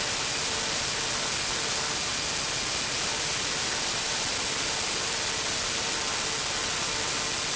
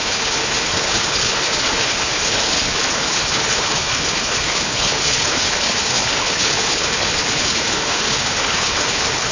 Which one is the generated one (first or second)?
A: second